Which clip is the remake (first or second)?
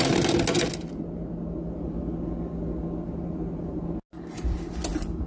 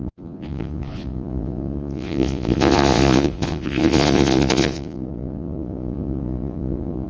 second